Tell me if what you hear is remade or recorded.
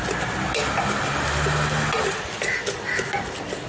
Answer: recorded